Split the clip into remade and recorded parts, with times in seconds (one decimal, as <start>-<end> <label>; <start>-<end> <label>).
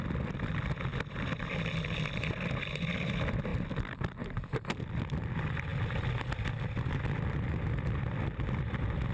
0.0-0.9 remade; 0.9-2.1 recorded; 2.1-9.1 remade